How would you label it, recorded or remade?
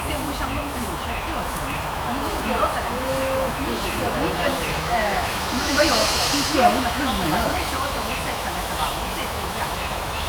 remade